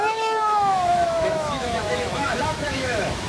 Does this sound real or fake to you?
fake